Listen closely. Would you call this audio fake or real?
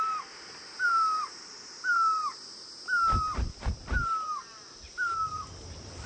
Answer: real